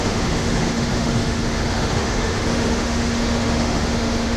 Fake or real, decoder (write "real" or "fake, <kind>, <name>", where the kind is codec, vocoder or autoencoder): fake, autoencoder, DAC-VAE